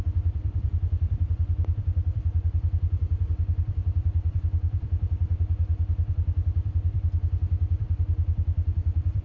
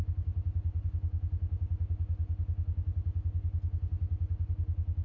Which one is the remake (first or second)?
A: first